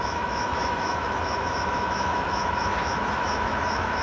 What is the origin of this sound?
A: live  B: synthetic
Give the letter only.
B